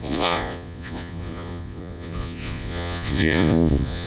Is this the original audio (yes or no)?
no